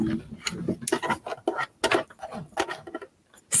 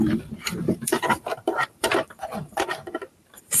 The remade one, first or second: second